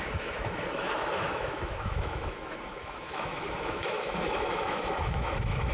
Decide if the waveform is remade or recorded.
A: remade